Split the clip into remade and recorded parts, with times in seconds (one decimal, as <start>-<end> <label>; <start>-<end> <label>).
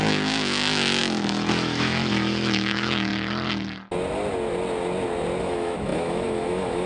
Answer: 0.0-3.1 remade; 3.1-5.4 recorded; 5.4-6.9 remade